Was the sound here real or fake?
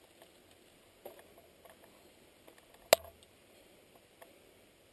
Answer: real